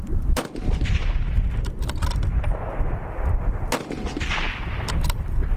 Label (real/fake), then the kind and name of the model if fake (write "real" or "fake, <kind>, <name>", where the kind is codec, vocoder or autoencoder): fake, vocoder, BigVGAN v2